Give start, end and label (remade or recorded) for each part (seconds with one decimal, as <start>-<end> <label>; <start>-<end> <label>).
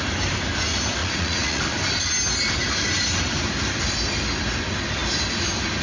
0.0-1.0 recorded; 1.0-1.6 remade; 1.6-5.8 recorded